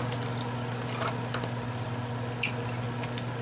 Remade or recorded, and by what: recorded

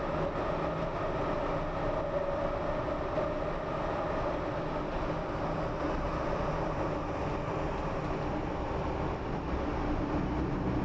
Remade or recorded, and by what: recorded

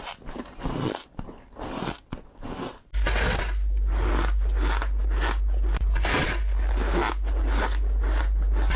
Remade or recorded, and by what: recorded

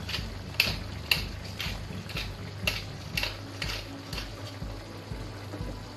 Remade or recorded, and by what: recorded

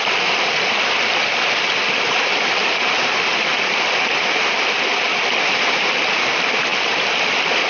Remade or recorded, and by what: remade, vocoder, BigVGAN v2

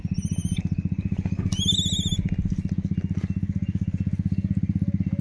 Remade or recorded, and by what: recorded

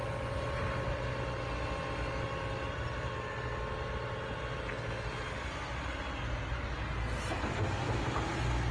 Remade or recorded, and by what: recorded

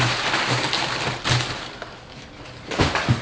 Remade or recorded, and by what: recorded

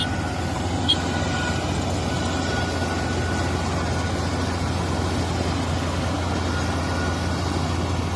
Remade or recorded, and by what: recorded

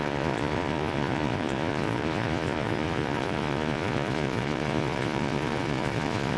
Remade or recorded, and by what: remade, vocoder, Vocos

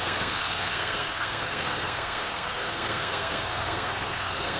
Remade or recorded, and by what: remade, codec, SNAC